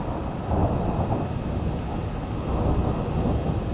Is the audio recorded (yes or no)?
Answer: yes